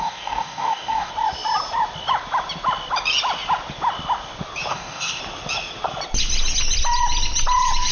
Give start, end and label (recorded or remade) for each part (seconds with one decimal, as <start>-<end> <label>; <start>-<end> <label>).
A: 0.0-1.1 remade; 1.1-4.7 recorded; 4.7-5.2 remade; 5.2-7.9 recorded